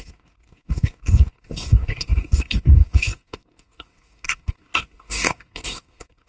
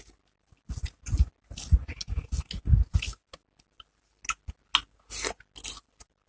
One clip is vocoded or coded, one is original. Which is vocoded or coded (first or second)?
first